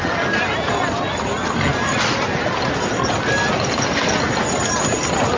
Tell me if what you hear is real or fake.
real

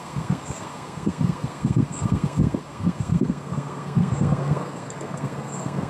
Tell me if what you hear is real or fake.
fake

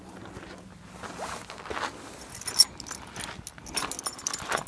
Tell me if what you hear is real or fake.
real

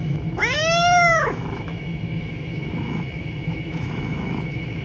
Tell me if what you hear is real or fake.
fake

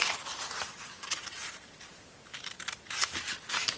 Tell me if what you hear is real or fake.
real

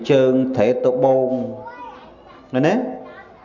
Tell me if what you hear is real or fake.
real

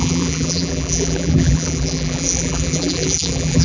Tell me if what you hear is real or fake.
fake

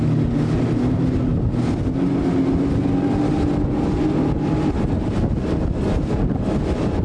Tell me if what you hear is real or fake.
real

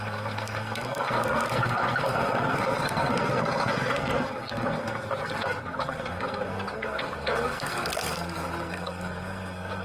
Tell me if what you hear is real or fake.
fake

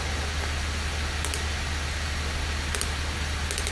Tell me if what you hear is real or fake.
real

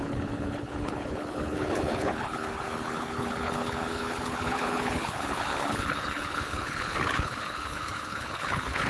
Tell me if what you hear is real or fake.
fake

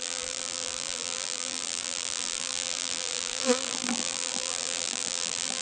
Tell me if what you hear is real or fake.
fake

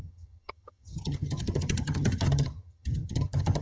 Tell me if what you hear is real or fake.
fake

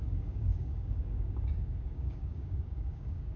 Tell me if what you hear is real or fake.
fake